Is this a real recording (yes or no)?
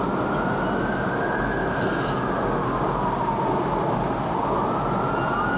yes